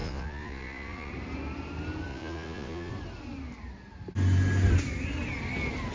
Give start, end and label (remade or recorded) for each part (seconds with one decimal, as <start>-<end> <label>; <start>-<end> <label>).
0.0-1.1 remade; 1.1-2.1 recorded; 2.1-2.9 remade; 2.9-5.9 recorded